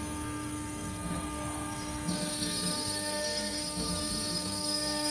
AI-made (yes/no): yes